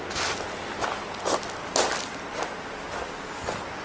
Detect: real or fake real